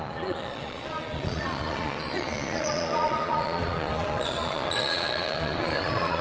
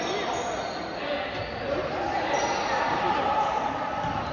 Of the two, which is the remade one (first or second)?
first